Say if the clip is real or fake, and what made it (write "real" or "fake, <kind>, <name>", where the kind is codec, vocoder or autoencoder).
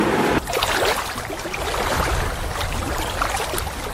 real